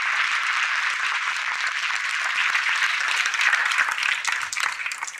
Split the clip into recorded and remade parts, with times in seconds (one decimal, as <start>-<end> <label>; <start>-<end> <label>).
0.0-2.4 remade; 2.4-3.0 recorded; 3.0-3.6 remade; 3.6-4.8 recorded; 4.8-5.2 remade